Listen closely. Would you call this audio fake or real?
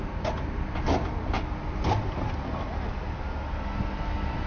real